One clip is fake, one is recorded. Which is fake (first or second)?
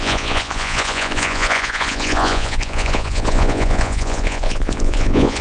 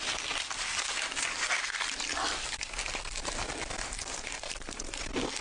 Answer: first